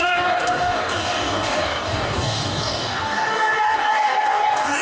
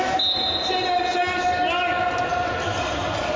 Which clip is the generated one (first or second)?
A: first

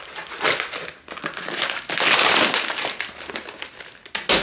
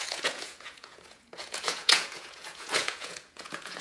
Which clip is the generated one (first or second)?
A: second